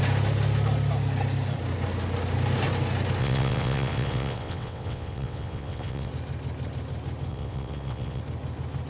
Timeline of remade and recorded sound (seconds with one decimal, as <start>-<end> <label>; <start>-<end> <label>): 0.0-3.2 recorded; 3.2-6.1 remade; 6.1-7.3 recorded; 7.3-8.2 remade; 8.2-8.9 recorded

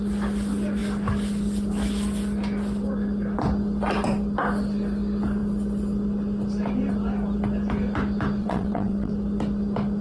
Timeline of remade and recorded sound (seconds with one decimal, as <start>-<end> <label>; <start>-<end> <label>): 0.0-8.4 recorded; 8.4-9.1 remade; 9.1-10.0 recorded

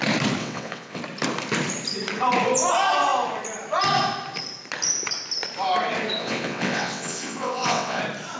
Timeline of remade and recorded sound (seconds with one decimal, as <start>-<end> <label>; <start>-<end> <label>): 0.0-0.4 recorded; 0.4-1.0 remade; 1.0-6.2 recorded; 6.2-8.0 remade; 8.0-8.4 recorded

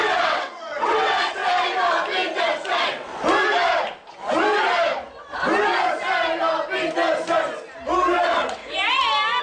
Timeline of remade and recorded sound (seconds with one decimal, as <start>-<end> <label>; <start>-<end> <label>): 0.0-1.4 remade; 1.4-2.4 recorded; 2.4-3.1 remade; 3.1-8.2 recorded; 8.2-8.6 remade; 8.6-9.4 recorded